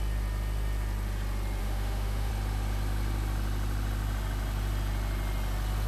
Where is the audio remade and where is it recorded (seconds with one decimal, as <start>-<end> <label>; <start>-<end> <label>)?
0.0-1.6 recorded; 1.6-2.3 remade; 2.3-5.9 recorded